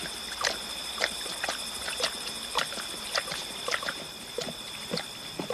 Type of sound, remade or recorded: recorded